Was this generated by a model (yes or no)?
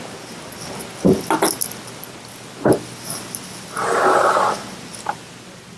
no